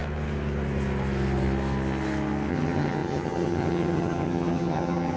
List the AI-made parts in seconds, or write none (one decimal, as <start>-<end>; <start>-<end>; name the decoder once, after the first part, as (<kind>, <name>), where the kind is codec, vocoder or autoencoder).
2.5-5.2 (vocoder, HiFi-GAN)